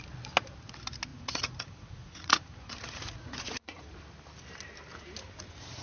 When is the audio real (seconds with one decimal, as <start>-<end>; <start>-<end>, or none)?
0.0-1.1; 3.8-5.8